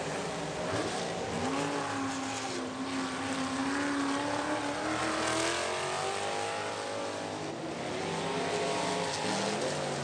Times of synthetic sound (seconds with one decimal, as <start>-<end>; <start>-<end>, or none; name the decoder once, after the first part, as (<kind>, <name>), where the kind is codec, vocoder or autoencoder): none